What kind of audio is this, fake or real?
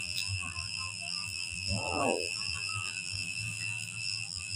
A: fake